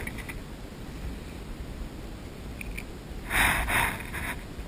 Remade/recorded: recorded